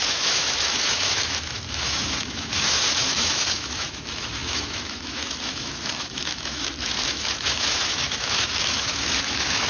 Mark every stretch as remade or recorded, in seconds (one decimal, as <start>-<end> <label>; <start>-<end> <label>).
0.0-9.7 remade